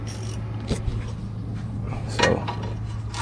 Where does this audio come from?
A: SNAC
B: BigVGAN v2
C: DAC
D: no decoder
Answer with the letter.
D